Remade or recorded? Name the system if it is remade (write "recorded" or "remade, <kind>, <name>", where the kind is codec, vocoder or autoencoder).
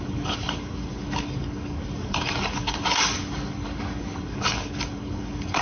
remade, codec, DAC